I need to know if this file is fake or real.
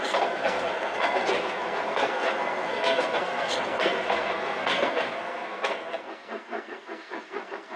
fake